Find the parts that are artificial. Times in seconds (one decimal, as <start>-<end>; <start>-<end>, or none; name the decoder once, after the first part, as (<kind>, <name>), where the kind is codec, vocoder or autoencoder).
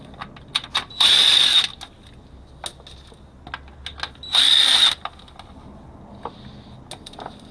none